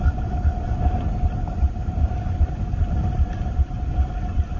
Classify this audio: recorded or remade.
recorded